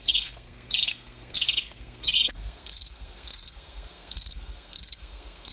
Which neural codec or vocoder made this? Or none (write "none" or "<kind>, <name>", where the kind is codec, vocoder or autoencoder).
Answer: codec, SNAC